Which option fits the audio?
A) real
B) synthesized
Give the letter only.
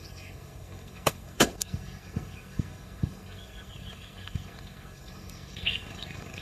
B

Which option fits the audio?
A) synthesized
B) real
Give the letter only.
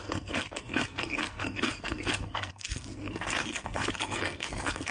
A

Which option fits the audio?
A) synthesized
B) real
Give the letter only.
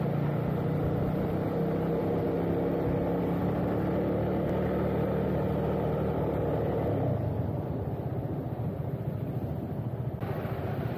B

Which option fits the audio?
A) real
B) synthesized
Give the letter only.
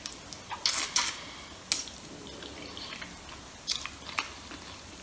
A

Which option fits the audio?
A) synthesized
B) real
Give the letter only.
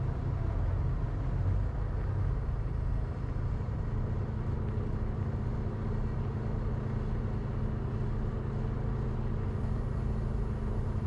B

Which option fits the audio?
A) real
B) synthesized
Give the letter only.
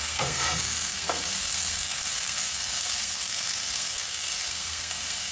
B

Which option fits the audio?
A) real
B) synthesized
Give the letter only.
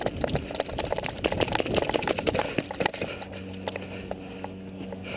A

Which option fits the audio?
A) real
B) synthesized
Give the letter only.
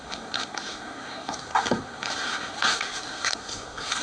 B